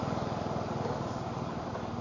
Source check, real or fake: real